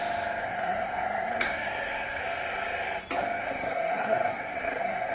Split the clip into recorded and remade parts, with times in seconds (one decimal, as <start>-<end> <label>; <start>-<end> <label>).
0.0-0.4 recorded; 0.4-2.2 remade; 2.2-3.4 recorded; 3.4-5.1 remade